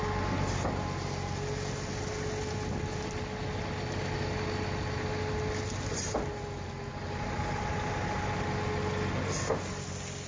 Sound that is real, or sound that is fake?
real